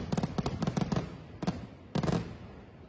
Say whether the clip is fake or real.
real